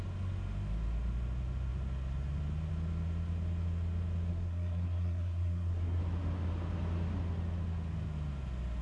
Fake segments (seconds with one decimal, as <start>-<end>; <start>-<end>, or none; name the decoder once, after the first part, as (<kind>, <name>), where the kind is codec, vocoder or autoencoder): 4.3-6.0 (codec, SNAC)

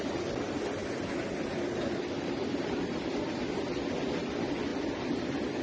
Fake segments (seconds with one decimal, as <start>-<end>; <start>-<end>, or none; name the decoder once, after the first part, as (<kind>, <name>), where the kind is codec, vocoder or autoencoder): none

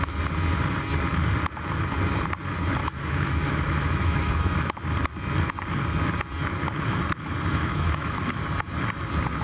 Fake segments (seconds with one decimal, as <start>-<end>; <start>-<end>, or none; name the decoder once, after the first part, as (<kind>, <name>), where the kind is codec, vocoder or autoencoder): 2.8-4.6 (autoencoder, DAC-VAE); 7.5-8.2

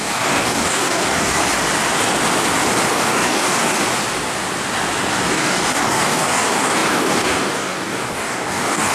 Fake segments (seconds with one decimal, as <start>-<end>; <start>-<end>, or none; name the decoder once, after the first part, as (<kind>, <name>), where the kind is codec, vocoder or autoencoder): 0.0-1.4 (codec, DAC); 2.9-3.8; 5.1-8.9

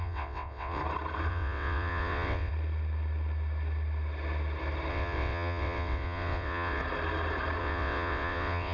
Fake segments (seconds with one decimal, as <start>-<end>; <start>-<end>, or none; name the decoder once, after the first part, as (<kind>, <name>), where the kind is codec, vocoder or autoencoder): 0.0-0.8 (vocoder, WaveNeXt); 1.3-2.5; 4.9-6.8; 7.6-8.7

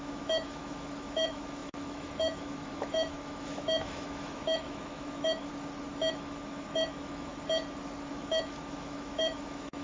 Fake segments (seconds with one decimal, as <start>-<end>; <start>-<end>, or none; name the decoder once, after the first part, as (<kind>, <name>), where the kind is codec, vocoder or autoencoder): 0.0-5.5 (autoencoder, DAC-VAE); 6.1-7.3; 8.1-9.8

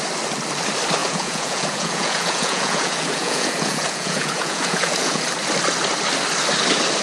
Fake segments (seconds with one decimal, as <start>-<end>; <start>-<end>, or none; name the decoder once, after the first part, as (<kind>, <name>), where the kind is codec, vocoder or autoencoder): 1.0-5.2 (vocoder, Vocos)

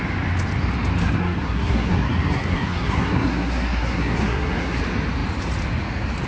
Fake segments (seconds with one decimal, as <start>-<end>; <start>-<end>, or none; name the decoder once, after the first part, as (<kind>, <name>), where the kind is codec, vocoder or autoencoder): 1.0-4.8 (codec, SNAC)